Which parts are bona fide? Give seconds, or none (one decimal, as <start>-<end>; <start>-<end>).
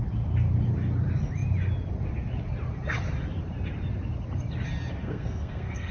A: 0.0-5.0